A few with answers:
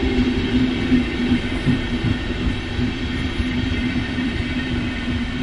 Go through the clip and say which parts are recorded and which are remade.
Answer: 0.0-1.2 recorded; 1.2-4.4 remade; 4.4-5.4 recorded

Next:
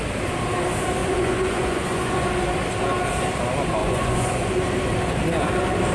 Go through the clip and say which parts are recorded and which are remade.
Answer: 0.0-1.0 recorded; 1.0-2.3 remade; 2.3-3.8 recorded; 3.8-4.5 remade; 4.5-5.9 recorded

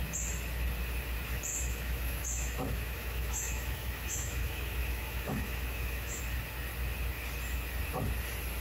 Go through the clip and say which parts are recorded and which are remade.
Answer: 0.0-1.5 recorded; 1.5-6.2 remade; 6.2-8.6 recorded

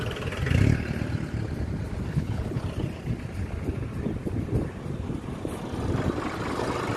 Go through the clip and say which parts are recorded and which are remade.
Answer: 0.0-2.1 recorded; 2.1-2.6 remade; 2.6-7.0 recorded

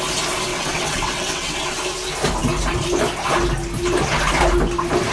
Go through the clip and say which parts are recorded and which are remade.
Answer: 0.0-0.5 recorded; 0.5-1.8 remade; 1.8-5.1 recorded